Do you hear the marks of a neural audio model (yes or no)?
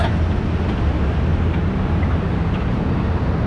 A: no